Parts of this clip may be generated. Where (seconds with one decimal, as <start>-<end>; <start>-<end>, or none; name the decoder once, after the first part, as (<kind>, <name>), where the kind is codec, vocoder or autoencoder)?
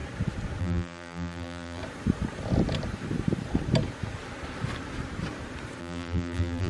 0.6-1.8 (vocoder, BigVGAN v2); 5.8-6.7